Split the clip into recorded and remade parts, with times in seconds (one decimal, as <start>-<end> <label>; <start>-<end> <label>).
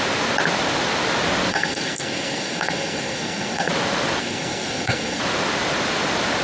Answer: 0.0-1.5 recorded; 1.5-3.7 remade; 3.7-4.2 recorded; 4.2-5.2 remade; 5.2-6.4 recorded